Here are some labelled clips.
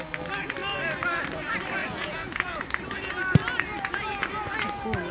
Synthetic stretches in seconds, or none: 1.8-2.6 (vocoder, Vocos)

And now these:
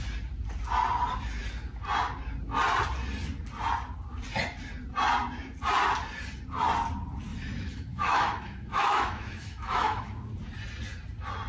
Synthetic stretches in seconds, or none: 7.3-10.3 (autoencoder, DAC-VAE)

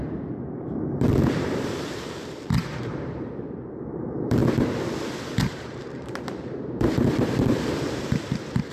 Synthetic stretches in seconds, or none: 0.0-4.4 (vocoder, BigVGAN v2); 5.3-8.7

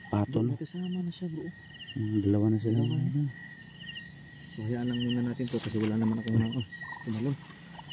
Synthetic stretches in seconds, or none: 1.0-1.7 (vocoder, BigVGAN v2)